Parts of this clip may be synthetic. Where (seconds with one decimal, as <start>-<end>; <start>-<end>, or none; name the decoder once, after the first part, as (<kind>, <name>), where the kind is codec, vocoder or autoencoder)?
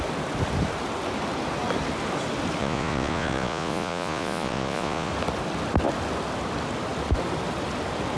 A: 2.6-5.1 (vocoder, Vocos)